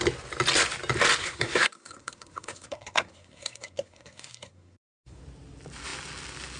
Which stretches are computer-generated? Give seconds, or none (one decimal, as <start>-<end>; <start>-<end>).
1.2-5.2